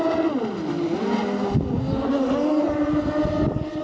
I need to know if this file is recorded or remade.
recorded